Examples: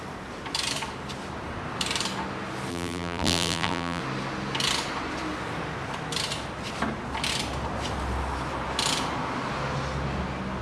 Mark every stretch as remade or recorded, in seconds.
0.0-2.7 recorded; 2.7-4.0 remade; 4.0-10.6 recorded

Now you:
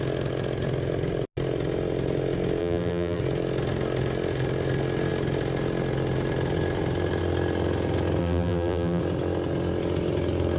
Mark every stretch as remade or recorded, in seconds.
0.0-2.6 recorded; 2.6-3.2 remade; 3.2-8.2 recorded; 8.2-9.0 remade; 9.0-10.6 recorded

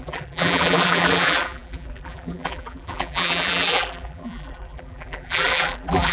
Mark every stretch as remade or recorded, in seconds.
0.0-6.1 remade

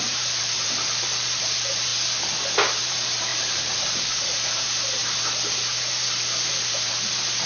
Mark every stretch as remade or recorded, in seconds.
0.0-1.9 remade; 1.9-2.8 recorded; 2.8-5.0 remade; 5.0-5.5 recorded; 5.5-7.5 remade

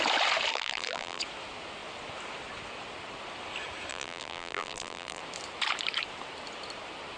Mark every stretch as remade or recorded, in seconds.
0.0-0.5 recorded; 0.5-1.2 remade; 1.2-3.9 recorded; 3.9-5.2 remade; 5.2-7.2 recorded

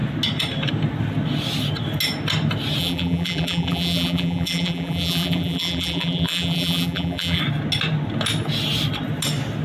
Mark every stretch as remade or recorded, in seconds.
0.0-2.8 recorded; 2.8-7.4 remade; 7.4-9.6 recorded

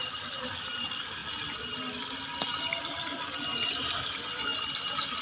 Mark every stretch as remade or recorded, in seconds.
0.0-5.2 recorded

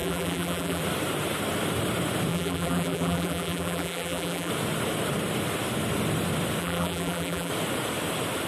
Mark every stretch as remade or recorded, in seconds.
0.0-0.8 remade; 0.8-2.3 recorded; 2.3-4.5 remade; 4.5-6.6 recorded; 6.6-7.5 remade; 7.5-8.5 recorded